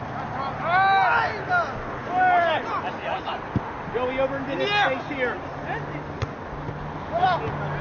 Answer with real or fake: real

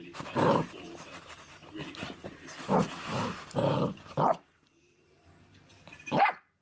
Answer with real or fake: fake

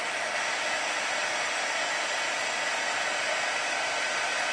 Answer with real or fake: real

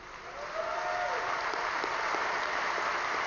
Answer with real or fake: real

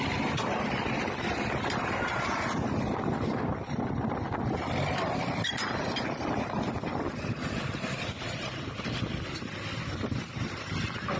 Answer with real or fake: fake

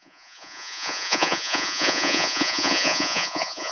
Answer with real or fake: fake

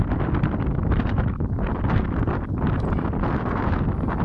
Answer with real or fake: real